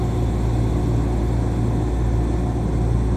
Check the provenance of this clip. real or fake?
real